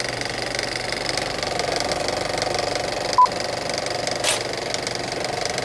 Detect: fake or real real